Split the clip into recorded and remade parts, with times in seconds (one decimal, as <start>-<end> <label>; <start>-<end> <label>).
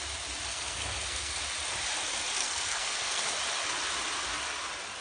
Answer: 0.0-0.5 recorded; 0.5-1.4 remade; 1.4-2.4 recorded; 2.4-3.2 remade; 3.2-5.0 recorded